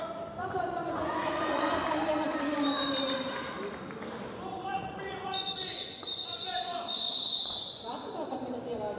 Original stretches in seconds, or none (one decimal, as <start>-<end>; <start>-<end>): 0.0-0.4; 1.8-4.7; 8.4-9.0